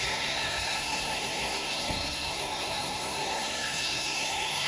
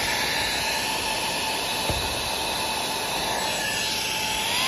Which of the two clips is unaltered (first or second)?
second